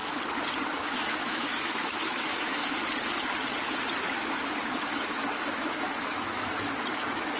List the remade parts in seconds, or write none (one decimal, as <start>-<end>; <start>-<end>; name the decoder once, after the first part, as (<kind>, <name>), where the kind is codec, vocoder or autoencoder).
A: 0.7-2.8 (autoencoder, DAC-VAE); 4.6-7.4